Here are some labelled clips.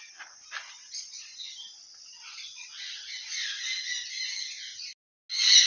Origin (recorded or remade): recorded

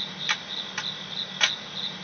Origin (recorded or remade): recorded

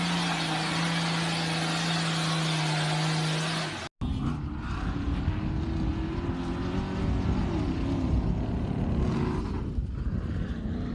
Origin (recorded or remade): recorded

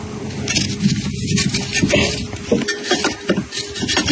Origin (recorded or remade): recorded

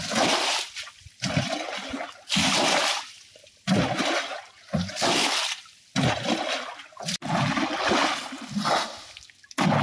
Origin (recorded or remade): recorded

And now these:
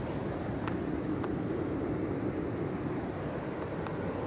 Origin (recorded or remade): recorded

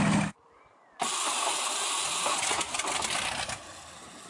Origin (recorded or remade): recorded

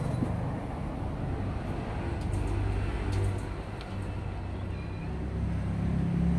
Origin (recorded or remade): recorded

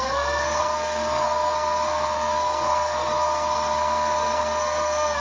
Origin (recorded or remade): remade